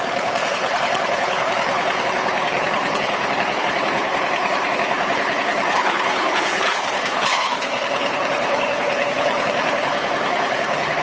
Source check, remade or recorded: remade